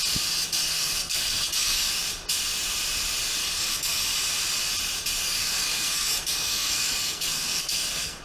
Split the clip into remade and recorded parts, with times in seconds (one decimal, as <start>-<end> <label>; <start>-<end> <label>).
0.0-0.6 recorded; 0.6-1.9 remade; 1.9-3.4 recorded; 3.4-4.0 remade; 4.0-5.4 recorded; 5.4-8.2 remade